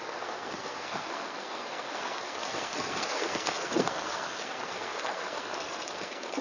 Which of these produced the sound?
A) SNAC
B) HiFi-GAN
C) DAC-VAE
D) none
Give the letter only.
A